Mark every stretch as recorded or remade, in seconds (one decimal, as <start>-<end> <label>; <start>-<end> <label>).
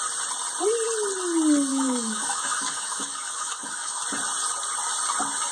0.0-1.7 recorded; 1.7-4.0 remade; 4.0-5.5 recorded